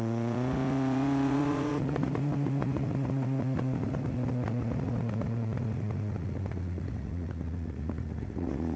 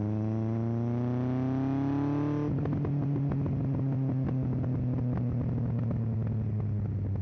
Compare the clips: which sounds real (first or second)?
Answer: second